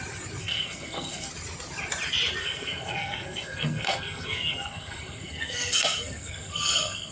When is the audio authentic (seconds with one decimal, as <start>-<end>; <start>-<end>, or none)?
0.0-0.4; 1.3-2.4